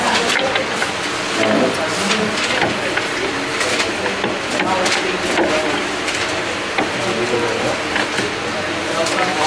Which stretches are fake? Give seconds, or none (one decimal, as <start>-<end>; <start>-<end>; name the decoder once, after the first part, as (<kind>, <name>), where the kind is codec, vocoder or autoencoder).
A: none